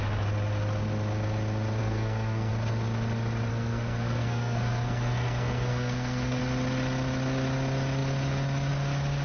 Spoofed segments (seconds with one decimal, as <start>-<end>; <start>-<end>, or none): 1.8-2.5; 3.5-6.4